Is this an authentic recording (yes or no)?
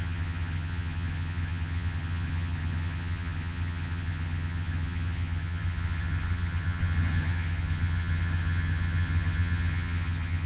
no